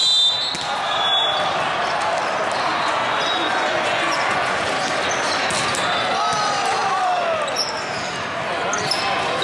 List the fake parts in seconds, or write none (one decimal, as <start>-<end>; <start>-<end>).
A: 2.7-4.7